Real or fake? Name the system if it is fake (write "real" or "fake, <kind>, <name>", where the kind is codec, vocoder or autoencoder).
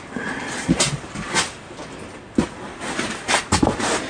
real